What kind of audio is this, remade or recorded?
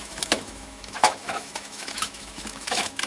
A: remade